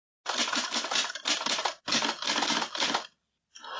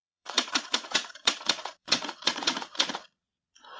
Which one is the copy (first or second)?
second